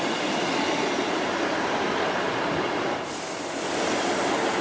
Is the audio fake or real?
real